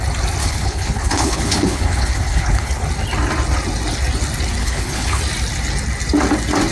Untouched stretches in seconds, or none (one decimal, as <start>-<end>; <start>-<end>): 0.0-0.4; 2.7-4.6; 5.2-6.7

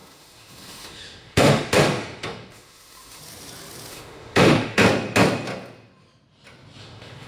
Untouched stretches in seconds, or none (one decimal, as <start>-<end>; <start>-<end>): 3.2-3.9; 4.8-6.8

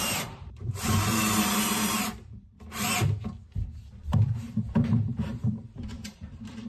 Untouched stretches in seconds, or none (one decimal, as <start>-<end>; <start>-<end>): 2.5-4.0

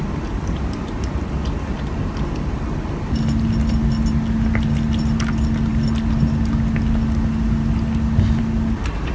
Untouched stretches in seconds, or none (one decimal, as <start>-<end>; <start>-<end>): 0.0-9.1

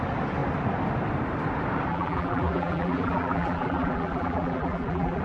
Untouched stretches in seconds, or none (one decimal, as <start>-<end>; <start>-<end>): 0.0-1.9

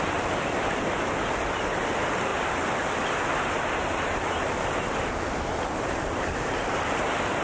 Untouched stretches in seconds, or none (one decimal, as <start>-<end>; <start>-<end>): 0.0-7.4